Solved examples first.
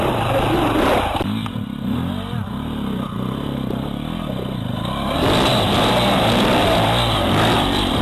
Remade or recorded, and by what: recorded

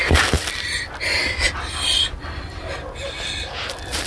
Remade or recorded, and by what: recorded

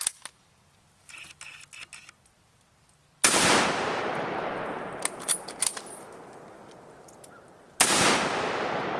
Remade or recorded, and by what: recorded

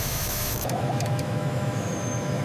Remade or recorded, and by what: remade, autoencoder, DAC-VAE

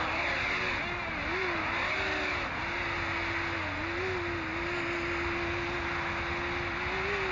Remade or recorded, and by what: recorded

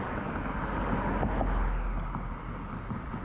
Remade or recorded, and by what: recorded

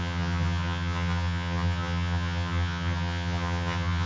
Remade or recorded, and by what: remade, vocoder, HiFi-GAN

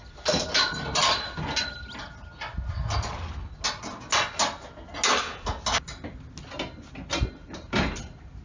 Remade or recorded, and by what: recorded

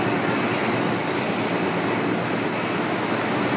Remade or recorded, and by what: recorded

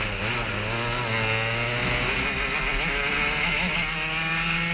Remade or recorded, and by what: recorded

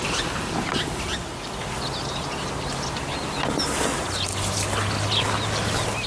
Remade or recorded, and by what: recorded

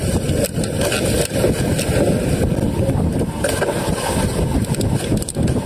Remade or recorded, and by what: recorded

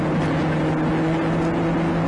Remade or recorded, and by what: recorded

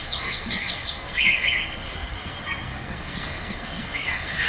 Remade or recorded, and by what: remade, codec, SNAC